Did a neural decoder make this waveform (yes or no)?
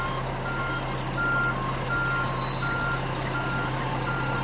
no